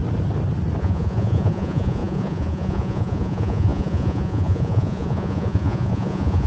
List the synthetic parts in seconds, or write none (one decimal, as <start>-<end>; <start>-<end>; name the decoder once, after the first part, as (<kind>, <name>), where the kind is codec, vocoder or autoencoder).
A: 0.8-6.5 (vocoder, Vocos)